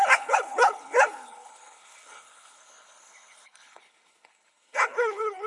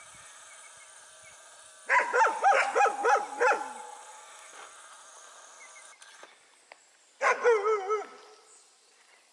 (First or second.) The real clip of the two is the second